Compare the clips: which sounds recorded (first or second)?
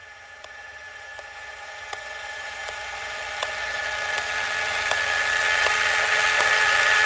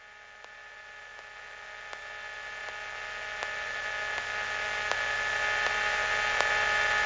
second